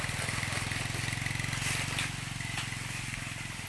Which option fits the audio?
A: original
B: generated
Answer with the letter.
A